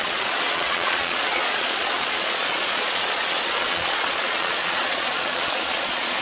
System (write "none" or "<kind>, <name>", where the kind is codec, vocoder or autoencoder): vocoder, Vocos